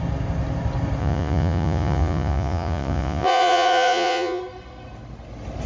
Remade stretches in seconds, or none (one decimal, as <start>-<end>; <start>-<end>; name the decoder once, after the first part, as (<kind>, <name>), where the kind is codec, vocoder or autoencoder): 1.0-4.4 (vocoder, Vocos)